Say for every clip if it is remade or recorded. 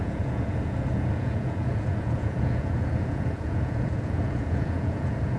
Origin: remade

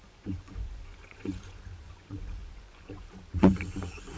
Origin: remade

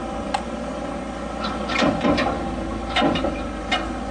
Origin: recorded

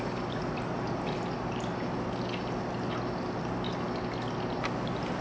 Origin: recorded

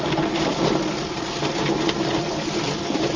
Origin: recorded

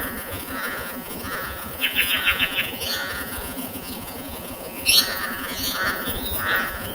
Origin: remade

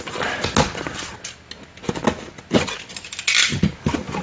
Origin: recorded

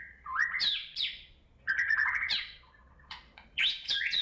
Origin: remade